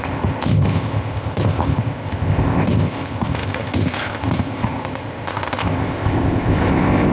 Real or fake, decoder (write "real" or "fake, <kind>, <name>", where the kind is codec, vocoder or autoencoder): fake, codec, ZipCodec